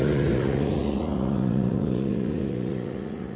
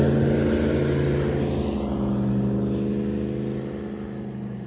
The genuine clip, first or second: second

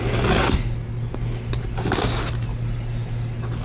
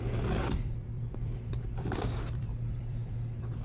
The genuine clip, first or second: first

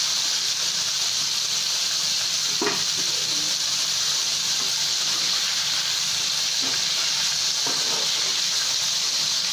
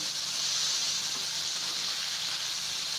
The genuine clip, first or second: second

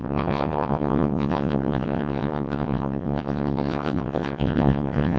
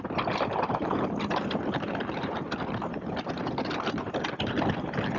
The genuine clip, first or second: second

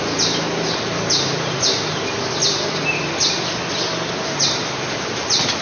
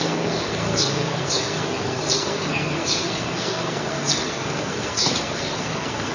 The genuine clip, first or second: first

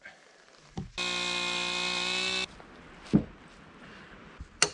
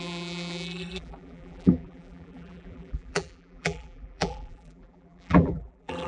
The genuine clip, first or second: first